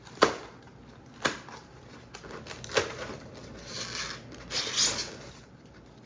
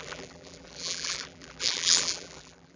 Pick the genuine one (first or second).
first